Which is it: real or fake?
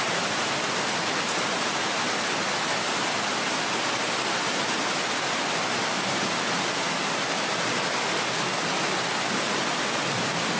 real